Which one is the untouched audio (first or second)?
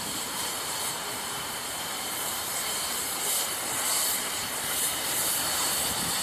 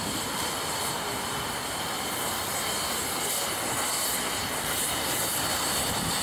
second